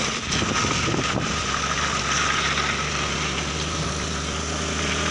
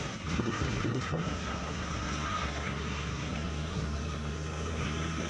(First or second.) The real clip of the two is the first